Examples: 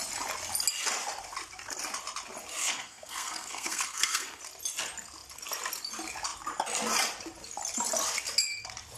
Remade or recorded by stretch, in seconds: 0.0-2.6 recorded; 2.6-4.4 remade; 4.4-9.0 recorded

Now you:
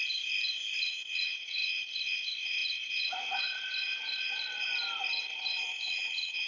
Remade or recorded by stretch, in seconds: 0.0-0.8 recorded; 0.8-4.7 remade; 4.7-5.2 recorded; 5.2-6.5 remade

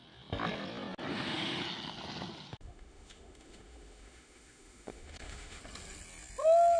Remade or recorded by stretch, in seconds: 0.0-1.1 recorded; 1.1-1.6 remade; 1.6-2.5 recorded; 2.5-5.6 remade; 5.6-6.8 recorded

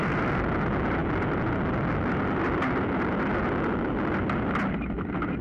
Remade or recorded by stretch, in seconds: 0.0-5.4 recorded